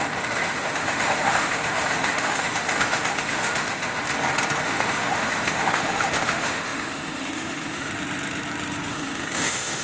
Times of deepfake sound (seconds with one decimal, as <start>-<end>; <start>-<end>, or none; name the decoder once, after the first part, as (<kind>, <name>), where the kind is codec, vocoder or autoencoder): 0.0-4.0 (autoencoder, DAC-VAE); 4.6-7.9; 8.9-9.8